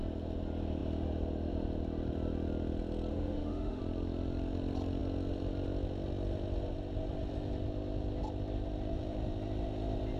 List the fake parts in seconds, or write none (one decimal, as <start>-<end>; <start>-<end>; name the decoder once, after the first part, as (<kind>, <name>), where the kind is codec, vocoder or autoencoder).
3.1-3.8 (autoencoder, DAC-VAE)

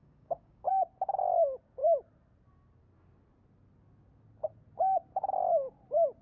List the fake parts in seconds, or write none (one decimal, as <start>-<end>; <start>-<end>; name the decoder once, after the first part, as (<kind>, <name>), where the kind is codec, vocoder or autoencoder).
0.0-0.7 (codec, DAC)

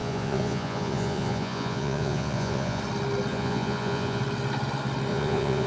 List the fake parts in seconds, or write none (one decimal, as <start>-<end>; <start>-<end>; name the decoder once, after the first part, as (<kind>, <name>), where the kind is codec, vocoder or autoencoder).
0.0-2.8 (vocoder, Vocos); 3.3-4.2; 5.1-5.7

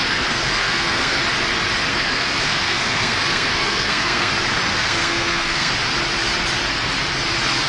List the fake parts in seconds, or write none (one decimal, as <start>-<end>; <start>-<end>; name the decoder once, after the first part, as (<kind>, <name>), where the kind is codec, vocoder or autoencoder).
0.0-1.2 (codec, SNAC); 1.9-4.3; 4.7-5.7

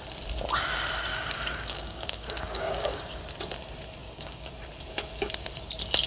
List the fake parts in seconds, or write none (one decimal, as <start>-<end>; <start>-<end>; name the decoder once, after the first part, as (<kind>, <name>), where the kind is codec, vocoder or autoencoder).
1.1-3.2 (codec, DAC); 4.0-4.5

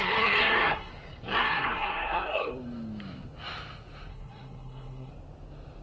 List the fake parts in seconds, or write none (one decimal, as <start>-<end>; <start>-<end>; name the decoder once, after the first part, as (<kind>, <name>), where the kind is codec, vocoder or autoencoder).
0.4-0.9 (codec, SNAC); 1.4-2.5; 4.1-5.1